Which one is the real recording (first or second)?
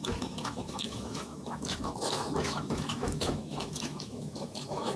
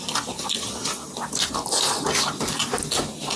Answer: second